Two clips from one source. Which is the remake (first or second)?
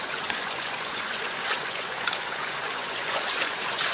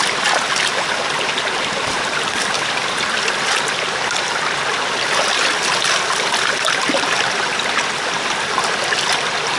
first